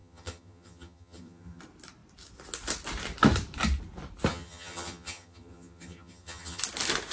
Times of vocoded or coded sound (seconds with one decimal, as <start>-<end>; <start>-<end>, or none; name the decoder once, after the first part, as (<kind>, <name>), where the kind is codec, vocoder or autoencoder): 0.0-1.6 (vocoder, HiFi-GAN); 4.3-6.6